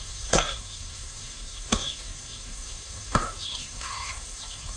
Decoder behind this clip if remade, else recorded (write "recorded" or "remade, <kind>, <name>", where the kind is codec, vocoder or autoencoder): remade, codec, SNAC